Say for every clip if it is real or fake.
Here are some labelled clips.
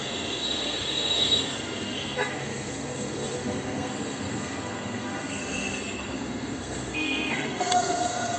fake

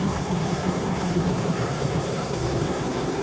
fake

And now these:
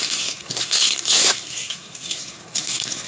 fake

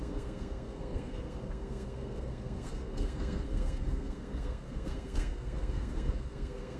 fake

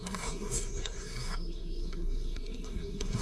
fake